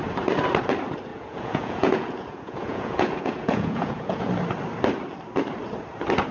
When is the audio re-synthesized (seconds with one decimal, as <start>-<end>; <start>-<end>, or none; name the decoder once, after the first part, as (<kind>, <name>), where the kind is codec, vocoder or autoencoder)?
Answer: 1.1-4.3 (vocoder, Vocos)

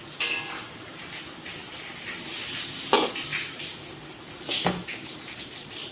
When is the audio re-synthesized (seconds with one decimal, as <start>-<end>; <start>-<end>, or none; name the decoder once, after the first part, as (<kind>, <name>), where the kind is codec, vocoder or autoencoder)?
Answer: none

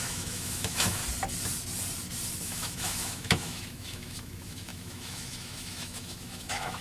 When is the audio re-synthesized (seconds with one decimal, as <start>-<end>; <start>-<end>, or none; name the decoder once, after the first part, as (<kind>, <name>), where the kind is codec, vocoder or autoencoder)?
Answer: 0.0-1.0 (autoencoder, DAC-VAE); 2.4-6.8

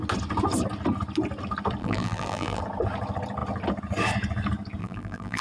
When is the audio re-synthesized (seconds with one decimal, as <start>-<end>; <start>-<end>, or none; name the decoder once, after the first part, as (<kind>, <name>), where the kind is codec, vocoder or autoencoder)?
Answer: 1.8-2.6 (vocoder, BigVGAN v2); 4.8-5.4

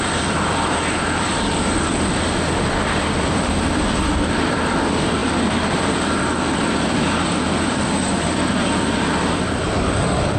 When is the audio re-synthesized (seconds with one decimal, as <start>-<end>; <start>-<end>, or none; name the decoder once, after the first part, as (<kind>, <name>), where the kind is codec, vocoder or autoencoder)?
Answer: 0.0-10.4 (vocoder, BigVGAN v2)

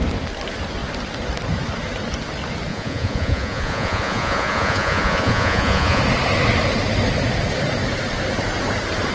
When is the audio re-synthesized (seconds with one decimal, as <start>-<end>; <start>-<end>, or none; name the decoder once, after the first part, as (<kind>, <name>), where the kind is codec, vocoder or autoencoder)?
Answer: 2.7-6.0 (vocoder, Vocos)